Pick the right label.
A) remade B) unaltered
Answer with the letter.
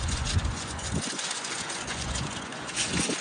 A